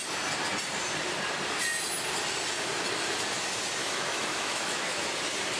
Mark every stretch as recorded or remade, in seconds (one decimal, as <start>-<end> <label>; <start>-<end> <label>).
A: 0.0-3.8 recorded; 3.8-5.1 remade; 5.1-5.6 recorded